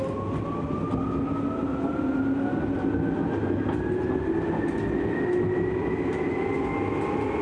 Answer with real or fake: real